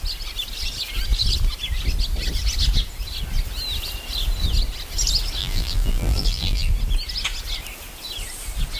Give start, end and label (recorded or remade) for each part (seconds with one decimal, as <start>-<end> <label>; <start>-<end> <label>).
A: 0.0-5.4 recorded; 5.4-6.7 remade; 6.7-8.8 recorded